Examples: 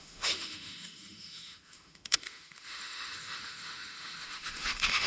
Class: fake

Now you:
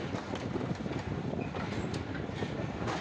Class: real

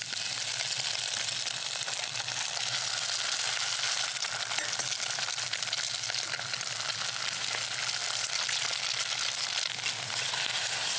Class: real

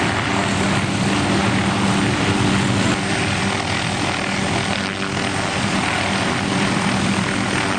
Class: real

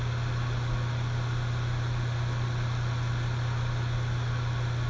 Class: real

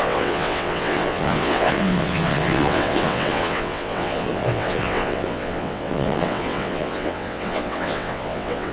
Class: fake